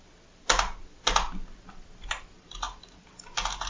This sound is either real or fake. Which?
real